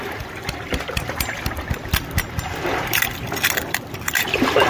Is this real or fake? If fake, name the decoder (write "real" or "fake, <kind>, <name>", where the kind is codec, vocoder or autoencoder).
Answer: real